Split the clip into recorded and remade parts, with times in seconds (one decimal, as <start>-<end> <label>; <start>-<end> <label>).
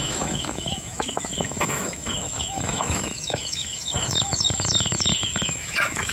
0.0-6.1 remade